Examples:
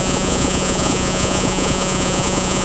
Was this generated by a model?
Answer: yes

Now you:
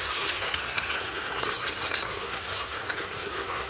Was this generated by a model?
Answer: yes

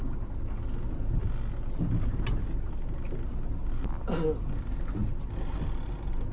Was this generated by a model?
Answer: no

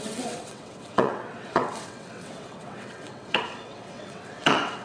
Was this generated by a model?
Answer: yes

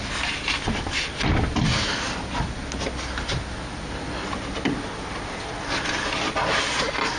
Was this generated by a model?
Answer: no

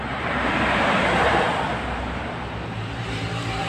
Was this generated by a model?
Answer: yes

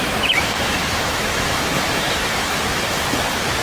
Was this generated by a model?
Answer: yes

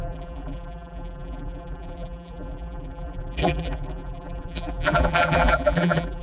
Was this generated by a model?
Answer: yes